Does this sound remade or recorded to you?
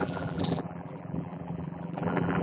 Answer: remade